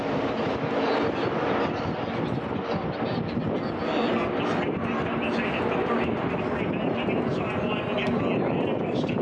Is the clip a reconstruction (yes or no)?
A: no